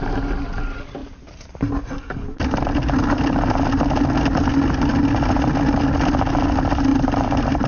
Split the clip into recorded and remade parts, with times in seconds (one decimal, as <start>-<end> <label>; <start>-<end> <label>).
0.0-1.0 recorded; 1.0-1.7 remade; 1.7-6.9 recorded; 6.9-7.7 remade